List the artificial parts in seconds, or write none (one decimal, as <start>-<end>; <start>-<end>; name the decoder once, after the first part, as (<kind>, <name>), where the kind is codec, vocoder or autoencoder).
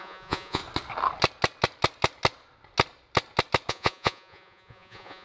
0.0-0.6 (vocoder, Vocos); 3.7-5.2